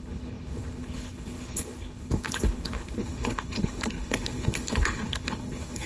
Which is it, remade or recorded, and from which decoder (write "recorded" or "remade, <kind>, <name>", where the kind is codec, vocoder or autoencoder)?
remade, codec, HILCodec